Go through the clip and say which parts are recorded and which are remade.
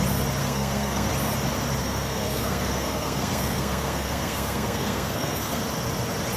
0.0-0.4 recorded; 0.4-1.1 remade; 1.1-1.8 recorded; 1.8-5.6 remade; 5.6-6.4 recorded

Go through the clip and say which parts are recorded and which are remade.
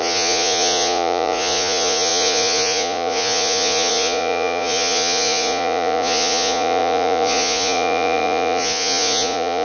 0.0-9.6 remade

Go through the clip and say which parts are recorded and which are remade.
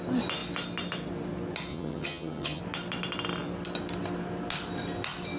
0.0-1.7 recorded; 1.7-2.6 remade; 2.6-5.4 recorded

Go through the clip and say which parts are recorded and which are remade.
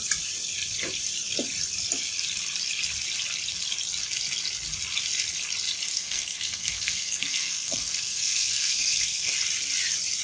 0.0-5.9 recorded; 5.9-9.3 remade; 9.3-10.2 recorded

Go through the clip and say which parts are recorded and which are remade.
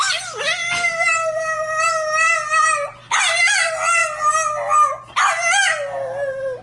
0.0-6.6 recorded